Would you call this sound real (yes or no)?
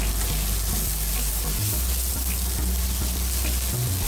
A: yes